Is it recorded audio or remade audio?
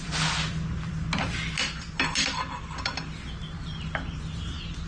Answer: recorded